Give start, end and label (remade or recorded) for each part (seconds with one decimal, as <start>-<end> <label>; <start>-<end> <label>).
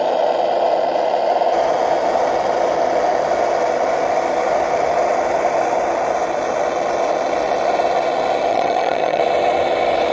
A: 0.0-8.5 recorded; 8.5-9.2 remade; 9.2-10.1 recorded